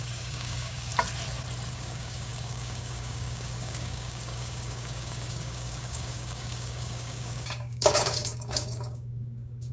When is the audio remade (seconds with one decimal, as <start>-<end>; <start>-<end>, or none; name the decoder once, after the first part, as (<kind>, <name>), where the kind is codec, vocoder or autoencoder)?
0.0-0.9 (codec, DAC); 1.7-9.7